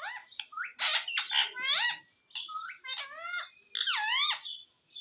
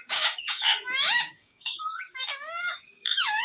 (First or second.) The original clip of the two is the first